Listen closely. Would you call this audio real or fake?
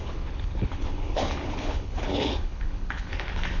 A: fake